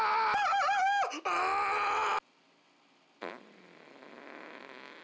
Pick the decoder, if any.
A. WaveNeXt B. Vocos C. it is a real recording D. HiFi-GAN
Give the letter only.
C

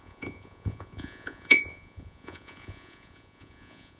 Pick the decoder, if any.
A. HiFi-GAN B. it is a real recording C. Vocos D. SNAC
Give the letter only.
C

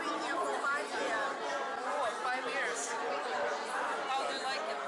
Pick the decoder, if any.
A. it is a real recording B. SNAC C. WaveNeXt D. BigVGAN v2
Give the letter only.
A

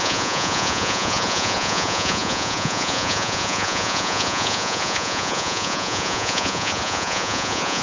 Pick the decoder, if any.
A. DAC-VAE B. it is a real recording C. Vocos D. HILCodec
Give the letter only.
C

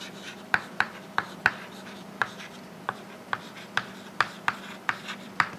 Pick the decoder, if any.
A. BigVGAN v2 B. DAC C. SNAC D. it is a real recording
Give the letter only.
A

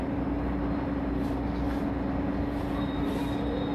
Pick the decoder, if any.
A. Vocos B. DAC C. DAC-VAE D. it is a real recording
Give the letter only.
D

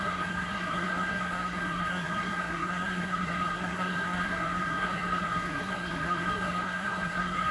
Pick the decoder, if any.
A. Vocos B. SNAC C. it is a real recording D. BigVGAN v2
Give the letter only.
B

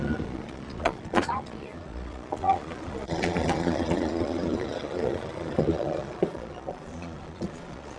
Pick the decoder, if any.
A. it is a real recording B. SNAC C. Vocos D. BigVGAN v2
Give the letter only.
C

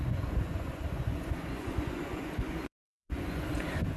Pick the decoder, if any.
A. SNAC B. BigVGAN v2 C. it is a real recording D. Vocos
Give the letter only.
D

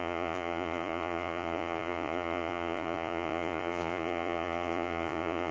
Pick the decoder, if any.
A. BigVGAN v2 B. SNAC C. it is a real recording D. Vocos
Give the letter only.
D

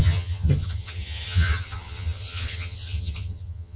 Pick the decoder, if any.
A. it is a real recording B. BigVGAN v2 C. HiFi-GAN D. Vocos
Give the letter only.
C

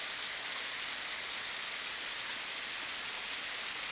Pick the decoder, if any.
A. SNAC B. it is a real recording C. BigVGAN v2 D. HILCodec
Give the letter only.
B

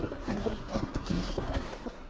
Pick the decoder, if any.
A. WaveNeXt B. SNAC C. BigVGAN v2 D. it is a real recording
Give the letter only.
B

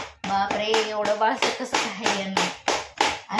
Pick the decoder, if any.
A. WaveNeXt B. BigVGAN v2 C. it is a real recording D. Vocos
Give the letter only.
C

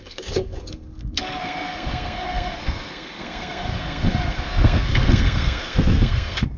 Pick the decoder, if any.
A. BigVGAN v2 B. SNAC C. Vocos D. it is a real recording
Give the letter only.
B